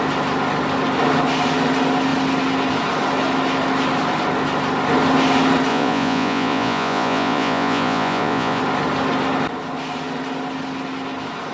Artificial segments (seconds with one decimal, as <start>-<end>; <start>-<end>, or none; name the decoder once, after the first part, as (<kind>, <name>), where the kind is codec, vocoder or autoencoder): 5.7-8.6 (vocoder, Vocos)